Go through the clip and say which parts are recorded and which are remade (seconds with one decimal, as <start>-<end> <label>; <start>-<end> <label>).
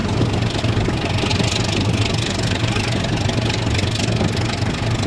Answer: 0.0-5.1 recorded